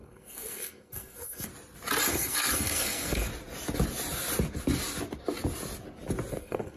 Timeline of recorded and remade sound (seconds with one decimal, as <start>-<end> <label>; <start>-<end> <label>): 0.0-1.5 remade; 1.5-2.1 recorded; 2.1-3.3 remade; 3.3-6.3 recorded; 6.3-6.8 remade